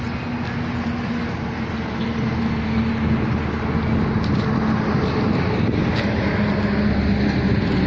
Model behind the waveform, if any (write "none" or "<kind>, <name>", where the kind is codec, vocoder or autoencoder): none